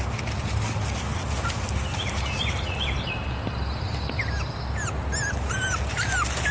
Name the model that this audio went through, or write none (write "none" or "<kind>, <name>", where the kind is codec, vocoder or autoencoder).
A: none